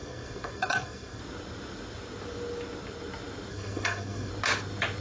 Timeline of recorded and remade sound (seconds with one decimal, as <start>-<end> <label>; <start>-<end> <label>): 0.0-1.2 remade; 1.2-3.5 recorded; 3.5-4.3 remade; 4.3-5.0 recorded